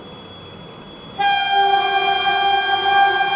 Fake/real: real